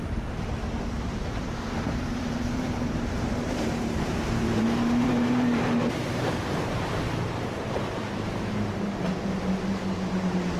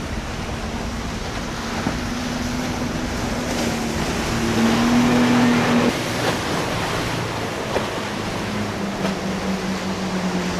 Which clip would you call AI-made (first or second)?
first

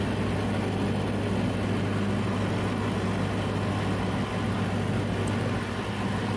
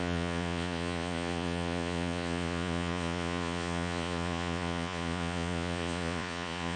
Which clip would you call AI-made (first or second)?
second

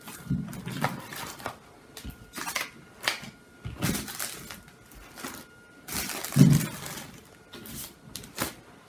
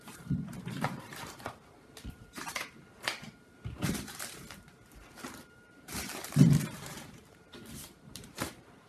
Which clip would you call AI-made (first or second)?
second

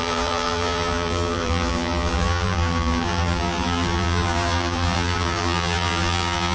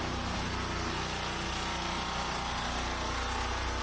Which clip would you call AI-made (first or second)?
first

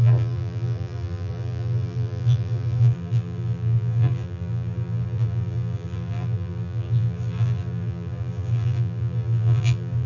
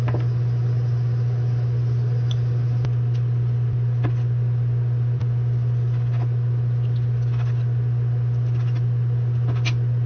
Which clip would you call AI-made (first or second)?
first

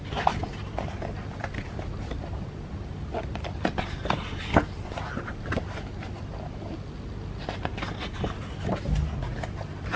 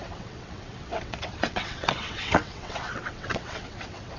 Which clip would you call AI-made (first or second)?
second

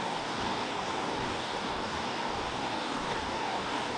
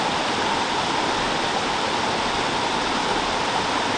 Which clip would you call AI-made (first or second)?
first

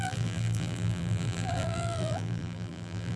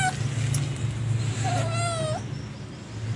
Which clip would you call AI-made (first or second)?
first